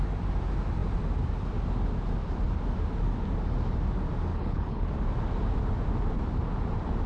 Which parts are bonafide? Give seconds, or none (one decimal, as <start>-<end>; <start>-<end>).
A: 0.0-4.3; 4.9-7.1